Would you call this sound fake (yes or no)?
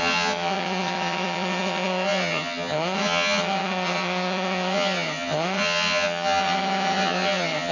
yes